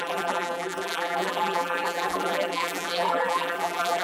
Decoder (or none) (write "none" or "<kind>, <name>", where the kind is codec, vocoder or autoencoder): vocoder, BigVGAN v2